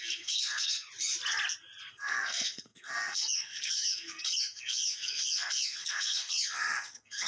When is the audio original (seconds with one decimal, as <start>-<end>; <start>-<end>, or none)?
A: 0.9-1.9